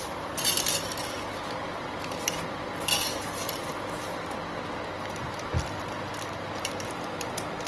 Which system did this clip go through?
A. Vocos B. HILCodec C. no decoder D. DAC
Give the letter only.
C